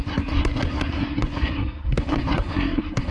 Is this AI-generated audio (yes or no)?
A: yes